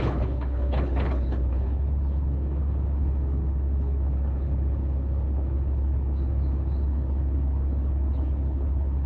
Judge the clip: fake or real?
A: fake